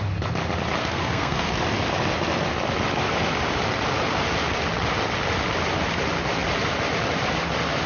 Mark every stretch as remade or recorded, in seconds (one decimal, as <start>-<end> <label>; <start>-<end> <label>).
0.0-0.8 recorded; 0.8-1.5 remade; 1.5-7.9 recorded